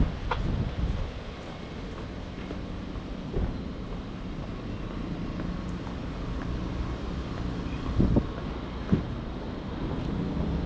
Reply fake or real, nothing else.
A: real